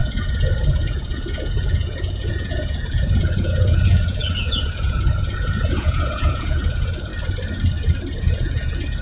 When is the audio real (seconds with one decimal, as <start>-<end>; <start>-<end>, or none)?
7.1-8.2